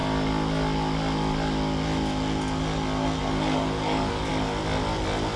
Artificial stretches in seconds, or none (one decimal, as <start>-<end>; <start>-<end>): 3.2-4.3